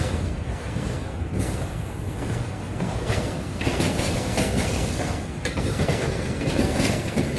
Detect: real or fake fake